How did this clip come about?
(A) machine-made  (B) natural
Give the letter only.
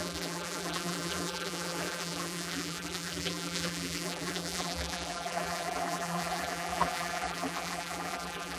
A